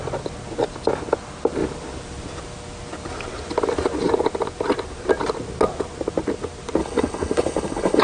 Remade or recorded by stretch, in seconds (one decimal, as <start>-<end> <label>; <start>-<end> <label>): 0.0-6.8 recorded; 6.8-8.0 remade